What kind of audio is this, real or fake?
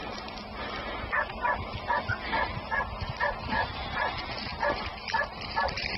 real